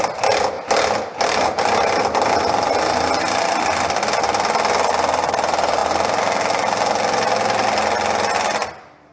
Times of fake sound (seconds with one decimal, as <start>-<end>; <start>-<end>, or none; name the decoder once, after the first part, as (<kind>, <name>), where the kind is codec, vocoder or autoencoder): none